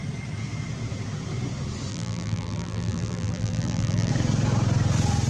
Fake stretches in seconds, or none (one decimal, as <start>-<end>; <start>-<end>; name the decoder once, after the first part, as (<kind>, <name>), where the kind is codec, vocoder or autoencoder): 1.9-4.1 (vocoder, BigVGAN v2)